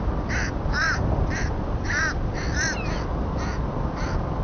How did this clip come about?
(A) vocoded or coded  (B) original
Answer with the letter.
B